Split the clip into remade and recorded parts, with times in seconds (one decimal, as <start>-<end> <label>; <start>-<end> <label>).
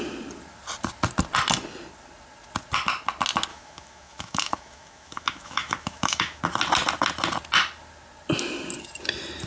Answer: 0.0-3.5 recorded; 3.5-6.4 remade; 6.4-9.5 recorded